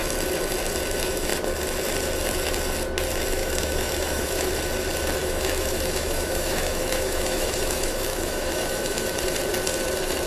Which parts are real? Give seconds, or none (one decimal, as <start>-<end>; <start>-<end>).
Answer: 0.0-3.4; 4.5-5.2; 9.2-10.3